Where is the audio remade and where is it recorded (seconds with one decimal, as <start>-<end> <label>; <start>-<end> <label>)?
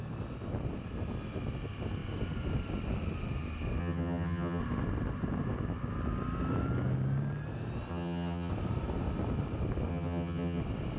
0.0-3.8 recorded; 3.8-4.6 remade; 4.6-7.9 recorded; 7.9-8.5 remade; 8.5-9.9 recorded; 9.9-10.6 remade; 10.6-11.0 recorded